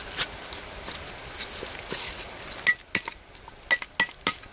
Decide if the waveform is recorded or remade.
recorded